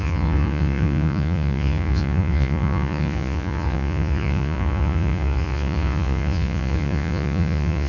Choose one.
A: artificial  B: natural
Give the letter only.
A